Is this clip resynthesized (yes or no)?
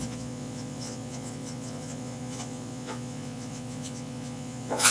yes